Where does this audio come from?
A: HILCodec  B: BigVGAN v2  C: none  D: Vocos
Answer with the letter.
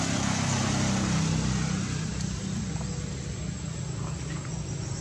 C